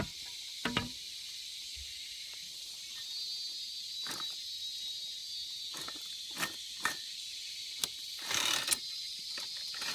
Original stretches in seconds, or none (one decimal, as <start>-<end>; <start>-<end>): 0.0-9.9